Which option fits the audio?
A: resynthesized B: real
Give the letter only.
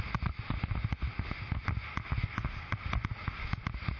B